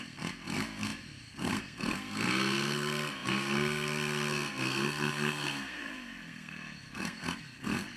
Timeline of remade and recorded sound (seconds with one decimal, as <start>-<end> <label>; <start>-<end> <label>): 0.0-8.0 remade